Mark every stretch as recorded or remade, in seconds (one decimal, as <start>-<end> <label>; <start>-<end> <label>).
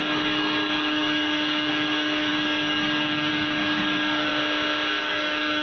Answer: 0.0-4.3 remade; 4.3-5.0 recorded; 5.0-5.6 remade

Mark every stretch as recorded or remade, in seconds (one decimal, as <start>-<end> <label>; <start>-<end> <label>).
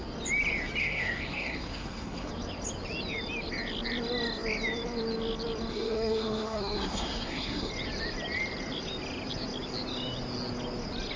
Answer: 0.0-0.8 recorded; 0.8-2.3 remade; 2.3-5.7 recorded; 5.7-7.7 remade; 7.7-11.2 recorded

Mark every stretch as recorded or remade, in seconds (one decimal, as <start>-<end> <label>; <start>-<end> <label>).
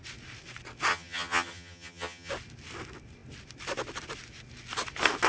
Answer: 0.0-0.9 recorded; 0.9-2.3 remade; 2.3-5.3 recorded